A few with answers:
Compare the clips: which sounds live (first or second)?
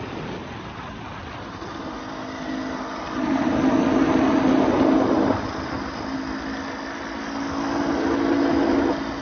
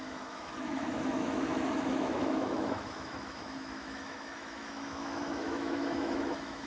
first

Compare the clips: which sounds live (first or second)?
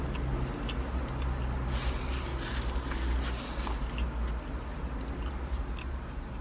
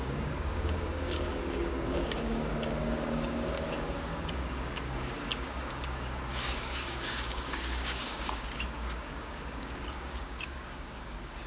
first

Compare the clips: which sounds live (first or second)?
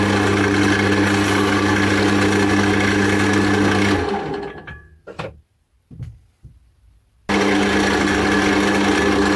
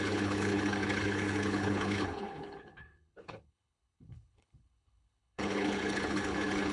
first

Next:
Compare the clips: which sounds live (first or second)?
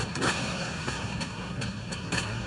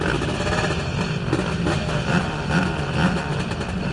second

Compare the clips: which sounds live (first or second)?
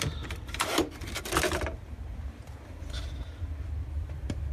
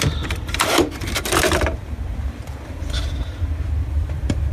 first